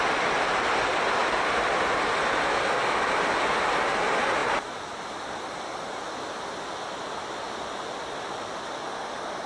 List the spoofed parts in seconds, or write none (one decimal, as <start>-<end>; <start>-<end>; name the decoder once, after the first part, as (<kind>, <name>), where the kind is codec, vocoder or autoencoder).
none